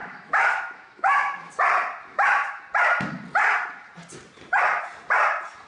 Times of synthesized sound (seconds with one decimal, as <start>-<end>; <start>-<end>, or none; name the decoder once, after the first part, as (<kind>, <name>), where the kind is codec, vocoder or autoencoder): 0.0-1.5 (autoencoder, DAC-VAE); 2.1-2.6